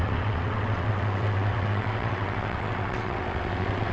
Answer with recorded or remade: remade